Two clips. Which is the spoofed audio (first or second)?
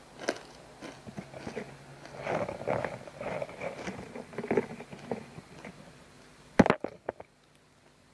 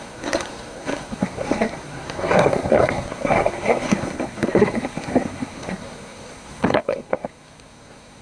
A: second